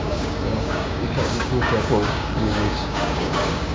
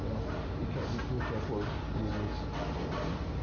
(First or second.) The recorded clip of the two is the second